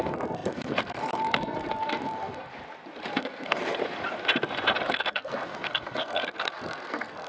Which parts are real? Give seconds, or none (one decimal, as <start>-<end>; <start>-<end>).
2.5-3.1; 3.6-4.9